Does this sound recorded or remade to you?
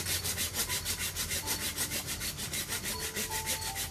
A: recorded